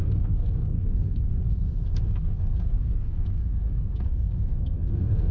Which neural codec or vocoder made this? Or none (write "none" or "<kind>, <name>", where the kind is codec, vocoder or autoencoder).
codec, SNAC